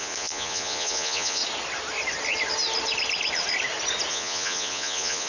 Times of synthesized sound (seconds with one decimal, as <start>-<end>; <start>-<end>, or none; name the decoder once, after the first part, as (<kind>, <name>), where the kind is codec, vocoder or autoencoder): 0.0-1.4 (vocoder, Vocos); 4.1-5.3